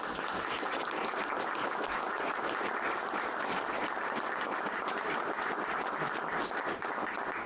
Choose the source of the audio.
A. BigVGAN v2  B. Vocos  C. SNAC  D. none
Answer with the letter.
D